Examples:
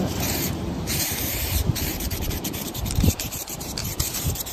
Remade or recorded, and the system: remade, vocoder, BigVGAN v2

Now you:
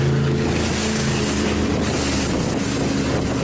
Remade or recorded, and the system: recorded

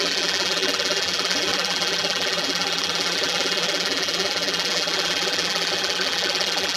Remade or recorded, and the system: remade, vocoder, BigVGAN v2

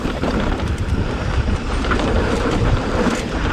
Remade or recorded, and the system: remade, vocoder, BigVGAN v2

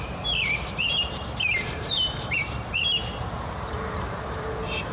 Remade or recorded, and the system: remade, vocoder, BigVGAN v2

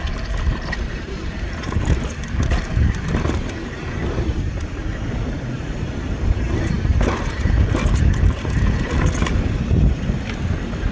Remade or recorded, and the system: recorded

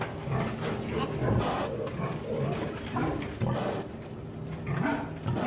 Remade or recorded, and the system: recorded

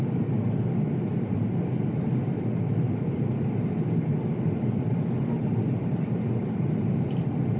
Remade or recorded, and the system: remade, vocoder, BigVGAN v2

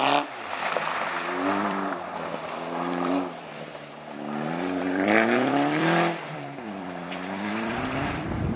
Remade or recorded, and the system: remade, vocoder, BigVGAN v2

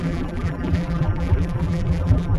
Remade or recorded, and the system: remade, vocoder, BigVGAN v2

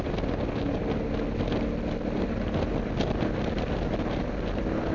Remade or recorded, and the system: recorded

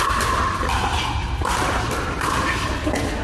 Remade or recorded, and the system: recorded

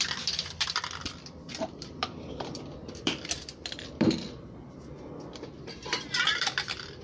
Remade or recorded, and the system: remade, vocoder, BigVGAN v2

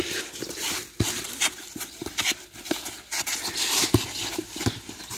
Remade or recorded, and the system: remade, vocoder, BigVGAN v2